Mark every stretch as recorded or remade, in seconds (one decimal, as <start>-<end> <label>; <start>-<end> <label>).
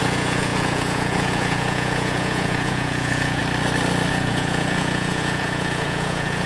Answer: 0.0-3.4 remade; 3.4-4.1 recorded; 4.1-6.5 remade